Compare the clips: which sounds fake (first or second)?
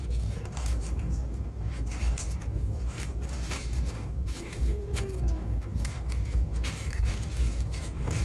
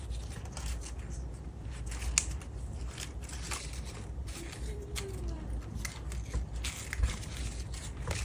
first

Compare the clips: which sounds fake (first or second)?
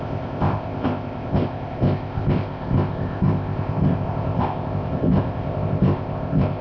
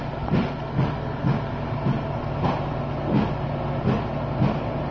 first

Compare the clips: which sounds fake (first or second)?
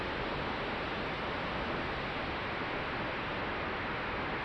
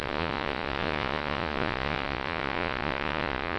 second